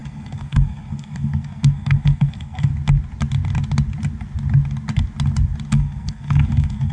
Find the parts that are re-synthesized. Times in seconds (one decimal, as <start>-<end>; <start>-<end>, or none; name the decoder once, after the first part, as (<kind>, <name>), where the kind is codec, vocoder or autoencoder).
0.0-2.7 (codec, SNAC); 5.7-6.9